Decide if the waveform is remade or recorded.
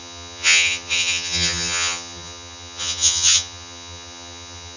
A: remade